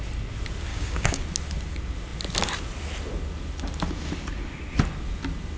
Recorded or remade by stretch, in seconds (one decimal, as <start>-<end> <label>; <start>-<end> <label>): 0.0-0.7 recorded; 0.7-1.2 remade; 1.2-5.6 recorded